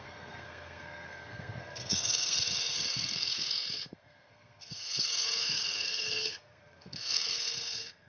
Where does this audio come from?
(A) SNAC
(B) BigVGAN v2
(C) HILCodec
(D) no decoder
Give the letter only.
A